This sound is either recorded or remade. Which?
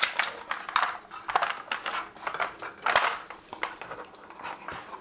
recorded